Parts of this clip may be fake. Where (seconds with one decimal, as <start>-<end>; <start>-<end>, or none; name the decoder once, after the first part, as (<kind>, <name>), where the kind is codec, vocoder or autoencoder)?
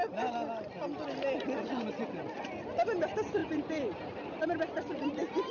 none